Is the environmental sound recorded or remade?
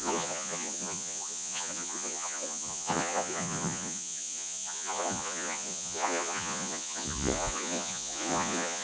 remade